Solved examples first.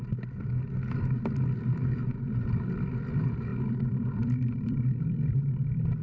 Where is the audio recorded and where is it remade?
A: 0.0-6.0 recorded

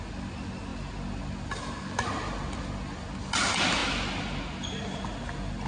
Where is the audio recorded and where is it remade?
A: 0.0-5.7 recorded

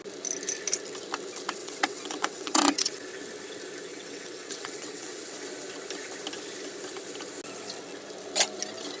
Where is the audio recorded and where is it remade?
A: 0.0-1.6 recorded; 1.6-3.0 remade; 3.0-3.9 recorded; 3.9-5.3 remade; 5.3-9.0 recorded

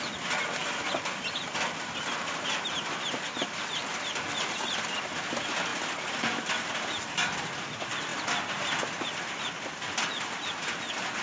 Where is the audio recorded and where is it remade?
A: 0.0-11.2 recorded

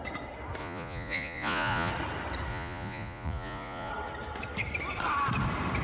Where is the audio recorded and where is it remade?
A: 0.0-0.6 recorded; 0.6-1.9 remade; 1.9-2.5 recorded; 2.5-3.9 remade; 3.9-5.8 recorded

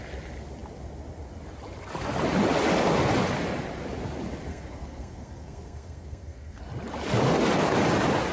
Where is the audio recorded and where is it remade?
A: 0.0-4.5 recorded; 4.5-6.6 remade; 6.6-8.3 recorded

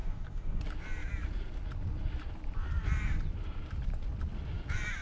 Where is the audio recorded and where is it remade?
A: 0.0-0.6 remade; 0.6-5.0 recorded

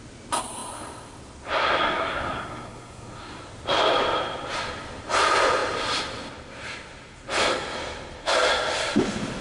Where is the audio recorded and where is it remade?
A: 0.0-1.8 recorded; 1.8-3.4 remade; 3.4-9.4 recorded